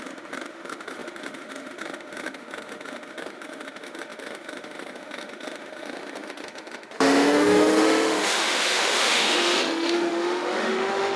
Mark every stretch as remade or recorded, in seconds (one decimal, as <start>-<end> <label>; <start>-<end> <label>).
0.0-11.2 remade